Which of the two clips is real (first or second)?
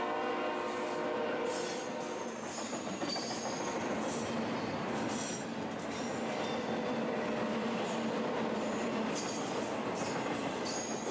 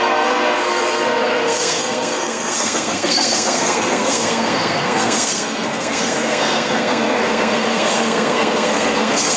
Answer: first